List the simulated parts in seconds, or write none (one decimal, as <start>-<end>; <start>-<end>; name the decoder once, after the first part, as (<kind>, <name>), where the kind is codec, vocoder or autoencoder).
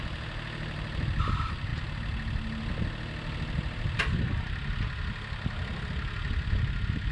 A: none